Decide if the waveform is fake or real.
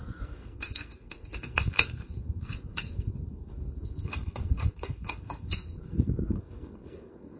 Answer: fake